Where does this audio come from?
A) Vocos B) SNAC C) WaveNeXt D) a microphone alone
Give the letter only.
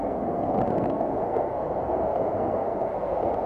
B